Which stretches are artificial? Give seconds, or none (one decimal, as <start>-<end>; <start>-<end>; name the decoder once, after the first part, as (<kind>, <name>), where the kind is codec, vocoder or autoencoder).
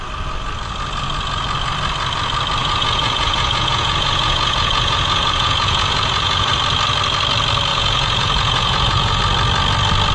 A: 2.6-6.5 (vocoder, Vocos); 7.7-9.2